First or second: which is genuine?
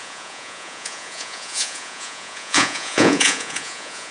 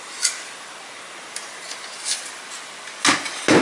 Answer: second